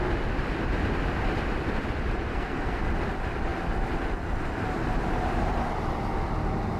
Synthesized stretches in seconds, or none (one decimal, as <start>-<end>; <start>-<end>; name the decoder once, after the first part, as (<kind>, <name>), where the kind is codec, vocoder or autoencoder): 2.3-2.8 (codec, SNAC)